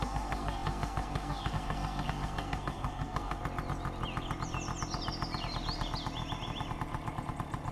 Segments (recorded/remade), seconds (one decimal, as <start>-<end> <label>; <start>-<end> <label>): 0.0-3.4 remade; 3.4-7.7 recorded